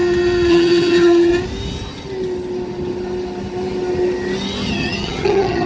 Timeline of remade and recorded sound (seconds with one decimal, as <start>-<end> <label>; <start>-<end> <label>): 0.0-0.5 recorded; 0.5-1.3 remade; 1.3-4.7 recorded; 4.7-5.7 remade